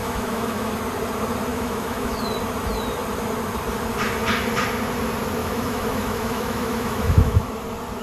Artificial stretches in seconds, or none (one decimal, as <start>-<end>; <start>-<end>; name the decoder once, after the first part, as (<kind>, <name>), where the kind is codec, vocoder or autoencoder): 0.0-0.7 (autoencoder, DAC-VAE); 1.5-2.2; 5.4-7.5